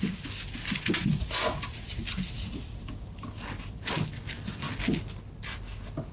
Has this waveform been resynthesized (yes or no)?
no